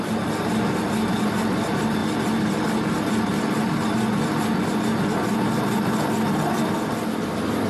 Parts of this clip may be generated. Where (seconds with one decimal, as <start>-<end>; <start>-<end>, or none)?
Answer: none